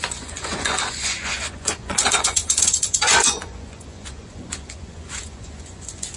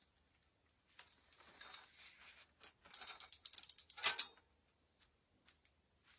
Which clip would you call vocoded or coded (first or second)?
first